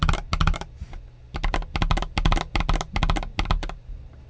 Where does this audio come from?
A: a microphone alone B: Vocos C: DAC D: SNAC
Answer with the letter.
A